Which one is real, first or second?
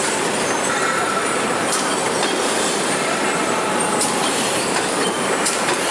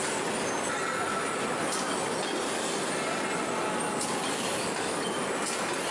second